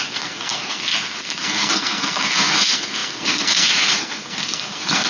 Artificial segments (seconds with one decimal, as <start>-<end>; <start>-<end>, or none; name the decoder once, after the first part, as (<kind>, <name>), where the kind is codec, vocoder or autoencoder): 0.0-5.1 (codec, SNAC)